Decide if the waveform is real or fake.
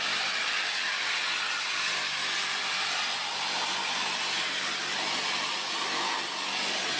real